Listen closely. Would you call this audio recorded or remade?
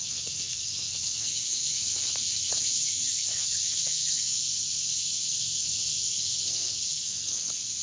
remade